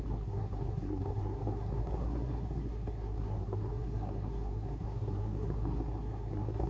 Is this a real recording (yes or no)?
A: no